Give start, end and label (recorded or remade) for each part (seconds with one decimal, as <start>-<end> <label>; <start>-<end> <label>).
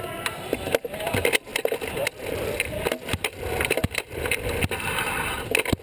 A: 0.0-1.5 recorded; 1.5-5.0 remade; 5.0-5.8 recorded